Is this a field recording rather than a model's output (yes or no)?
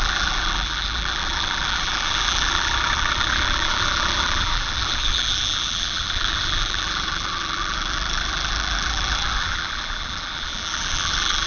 no